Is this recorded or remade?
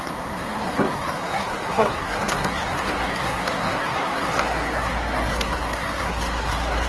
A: remade